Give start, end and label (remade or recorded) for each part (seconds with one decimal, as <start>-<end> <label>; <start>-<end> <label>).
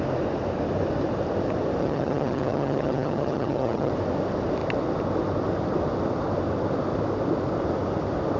0.0-1.8 recorded; 1.8-3.9 remade; 3.9-8.4 recorded